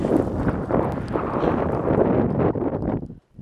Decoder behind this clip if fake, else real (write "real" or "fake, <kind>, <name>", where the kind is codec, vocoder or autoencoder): real